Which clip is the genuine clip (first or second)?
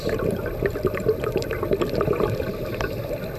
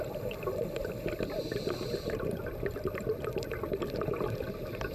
first